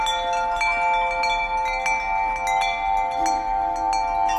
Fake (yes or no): no